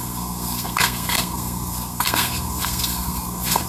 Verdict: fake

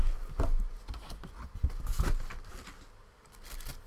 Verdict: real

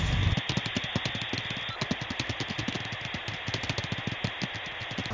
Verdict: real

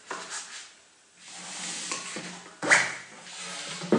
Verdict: real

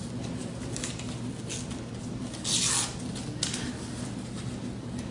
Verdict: real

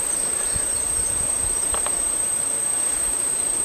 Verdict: fake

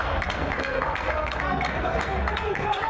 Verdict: fake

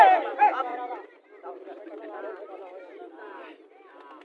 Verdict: fake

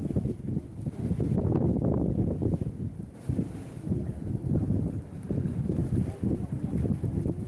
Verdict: real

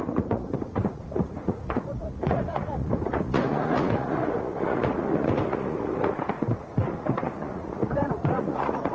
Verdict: fake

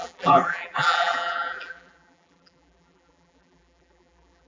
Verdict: fake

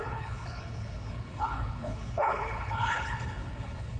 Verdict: fake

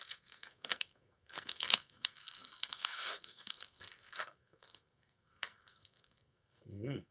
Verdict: fake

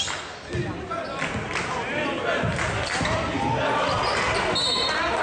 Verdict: real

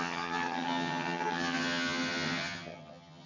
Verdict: fake